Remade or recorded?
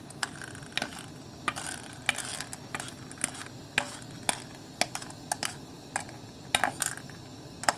recorded